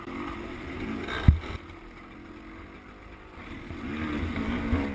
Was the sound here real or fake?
real